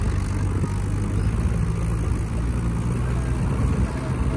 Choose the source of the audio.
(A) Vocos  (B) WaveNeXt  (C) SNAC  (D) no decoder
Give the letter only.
D